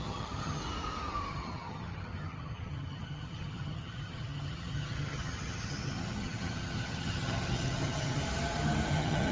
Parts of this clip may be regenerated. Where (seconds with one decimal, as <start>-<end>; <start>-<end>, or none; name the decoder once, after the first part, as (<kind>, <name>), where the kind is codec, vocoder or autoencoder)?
0.0-0.6 (vocoder, HiFi-GAN); 1.3-8.2; 8.9-9.3

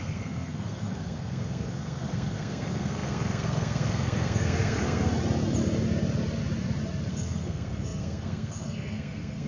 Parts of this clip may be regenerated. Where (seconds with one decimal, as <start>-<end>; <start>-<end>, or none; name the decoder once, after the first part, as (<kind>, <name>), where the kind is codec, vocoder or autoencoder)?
0.0-5.1 (codec, SNAC); 7.1-9.5

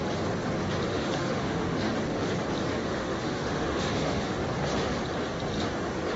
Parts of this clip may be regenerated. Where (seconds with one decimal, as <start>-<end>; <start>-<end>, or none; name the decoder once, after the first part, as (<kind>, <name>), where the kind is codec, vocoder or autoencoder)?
0.9-1.9 (autoencoder, DAC-VAE); 2.6-4.4

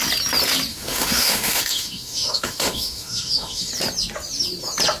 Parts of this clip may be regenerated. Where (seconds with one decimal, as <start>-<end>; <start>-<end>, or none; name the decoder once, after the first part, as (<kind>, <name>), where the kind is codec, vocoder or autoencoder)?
0.7-3.7 (autoencoder, DAC-VAE)

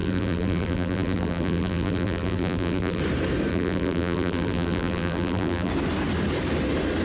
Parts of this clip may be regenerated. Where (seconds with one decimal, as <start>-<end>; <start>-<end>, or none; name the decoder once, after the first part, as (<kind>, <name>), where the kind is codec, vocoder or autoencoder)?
0.0-3.0 (vocoder, BigVGAN v2); 3.5-5.7